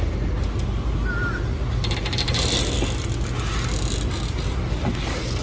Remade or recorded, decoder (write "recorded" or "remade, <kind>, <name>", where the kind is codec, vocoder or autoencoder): recorded